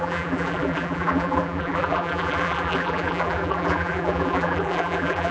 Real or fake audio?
fake